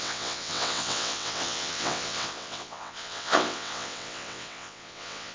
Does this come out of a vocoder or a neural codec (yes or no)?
yes